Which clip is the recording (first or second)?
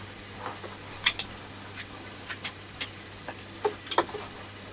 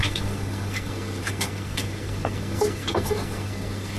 first